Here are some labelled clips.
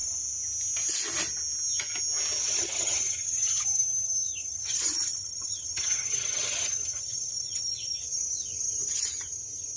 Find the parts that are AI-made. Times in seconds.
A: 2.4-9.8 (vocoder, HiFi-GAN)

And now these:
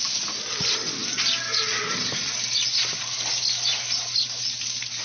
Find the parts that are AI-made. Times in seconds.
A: none

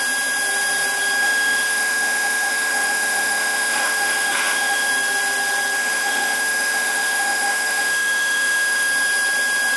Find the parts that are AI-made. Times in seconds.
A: 1.2-4.9 (autoencoder, DAC-VAE); 5.8-8.9

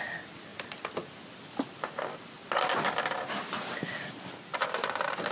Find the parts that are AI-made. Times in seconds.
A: 0.5-2.5 (vocoder, BigVGAN v2); 4.5-5.3

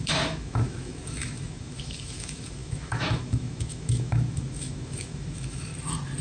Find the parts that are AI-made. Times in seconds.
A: 0.0-5.7 (autoencoder, DAC-VAE)

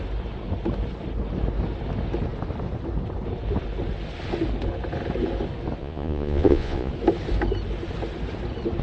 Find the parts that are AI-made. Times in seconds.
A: 5.8-6.9 (vocoder, Vocos)

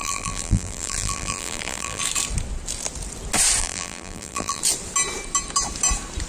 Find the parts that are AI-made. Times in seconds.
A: 0.0-2.0 (vocoder, BigVGAN v2); 3.6-4.6